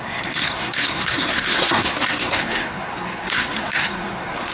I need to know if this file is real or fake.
fake